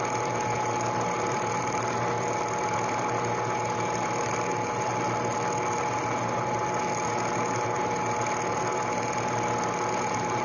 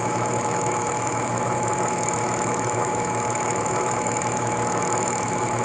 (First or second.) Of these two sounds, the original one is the first